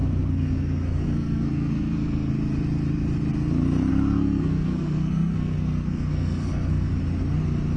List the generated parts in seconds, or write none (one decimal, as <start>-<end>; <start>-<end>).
0.0-2.3; 3.9-6.9